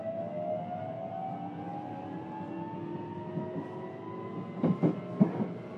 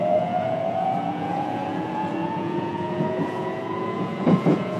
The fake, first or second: second